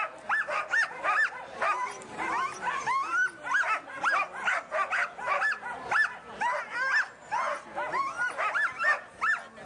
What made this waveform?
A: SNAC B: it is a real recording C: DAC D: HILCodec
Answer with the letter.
B